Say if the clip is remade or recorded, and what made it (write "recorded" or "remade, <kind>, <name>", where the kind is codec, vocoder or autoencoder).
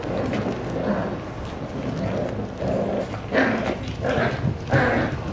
recorded